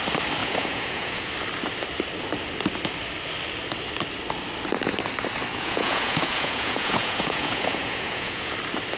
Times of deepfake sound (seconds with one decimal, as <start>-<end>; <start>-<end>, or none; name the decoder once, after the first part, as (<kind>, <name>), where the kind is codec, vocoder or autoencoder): 0.4-1.3 (vocoder, Vocos); 5.5-8.5